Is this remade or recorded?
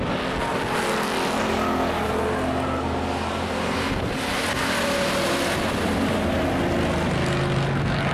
recorded